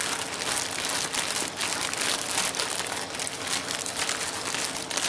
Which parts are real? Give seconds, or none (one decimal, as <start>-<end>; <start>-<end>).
0.0-5.1